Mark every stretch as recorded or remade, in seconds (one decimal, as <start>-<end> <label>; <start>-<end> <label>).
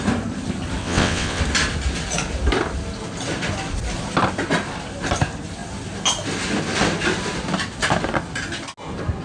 0.0-0.8 recorded; 0.8-1.4 remade; 1.4-9.2 recorded